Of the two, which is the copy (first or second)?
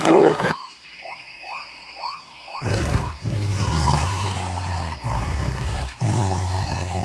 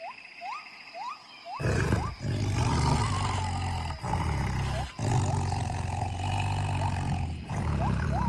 first